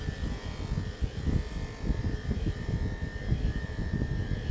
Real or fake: real